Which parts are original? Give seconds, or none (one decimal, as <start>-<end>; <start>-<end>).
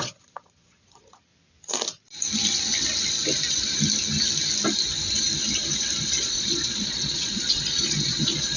1.3-6.0